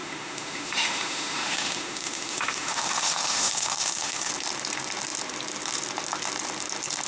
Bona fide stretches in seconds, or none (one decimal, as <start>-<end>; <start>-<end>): 4.3-7.1